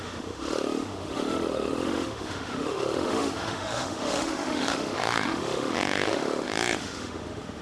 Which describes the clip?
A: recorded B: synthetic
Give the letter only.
B